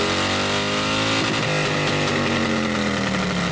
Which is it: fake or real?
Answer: real